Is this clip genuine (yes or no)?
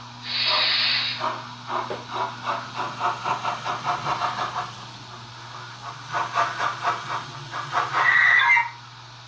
yes